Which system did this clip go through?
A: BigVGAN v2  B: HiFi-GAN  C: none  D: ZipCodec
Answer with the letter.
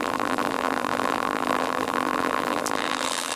A